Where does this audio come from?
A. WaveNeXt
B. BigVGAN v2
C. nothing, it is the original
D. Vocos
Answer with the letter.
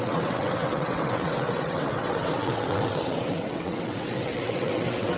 A